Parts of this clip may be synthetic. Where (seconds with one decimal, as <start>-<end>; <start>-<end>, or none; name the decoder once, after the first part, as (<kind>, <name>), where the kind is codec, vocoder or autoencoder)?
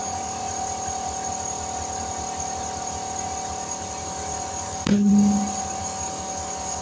0.0-0.4 (codec, DAC); 4.5-5.1; 5.8-6.8